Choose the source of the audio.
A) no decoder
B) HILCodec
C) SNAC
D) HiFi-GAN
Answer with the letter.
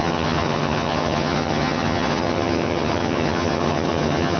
D